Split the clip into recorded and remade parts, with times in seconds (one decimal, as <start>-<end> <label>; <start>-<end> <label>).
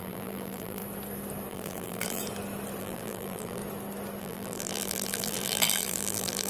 0.0-0.8 remade; 0.8-1.5 recorded; 1.5-2.2 remade; 2.2-2.8 recorded; 2.8-3.6 remade; 3.6-4.2 recorded; 4.2-6.5 remade